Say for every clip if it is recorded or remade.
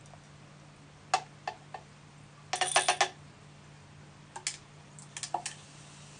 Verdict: recorded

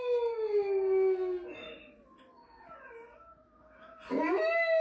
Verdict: recorded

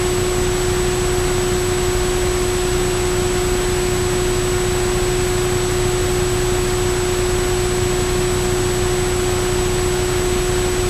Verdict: recorded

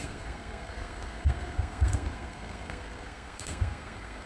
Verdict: remade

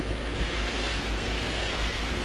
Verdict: remade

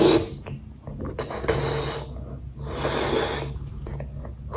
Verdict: recorded